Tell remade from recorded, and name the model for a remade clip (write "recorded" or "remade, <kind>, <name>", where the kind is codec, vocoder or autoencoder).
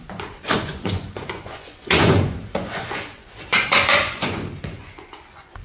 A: remade, vocoder, Vocos